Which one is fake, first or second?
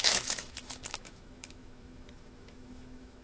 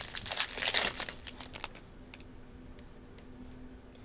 first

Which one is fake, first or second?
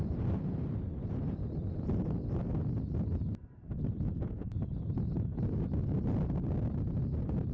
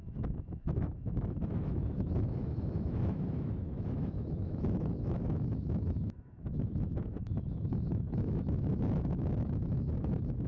second